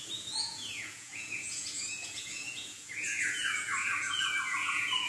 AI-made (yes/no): yes